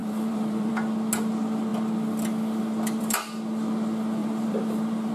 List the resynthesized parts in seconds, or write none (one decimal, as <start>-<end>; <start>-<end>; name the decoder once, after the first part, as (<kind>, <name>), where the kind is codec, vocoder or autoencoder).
0.0-0.7 (vocoder, BigVGAN v2); 4.2-5.1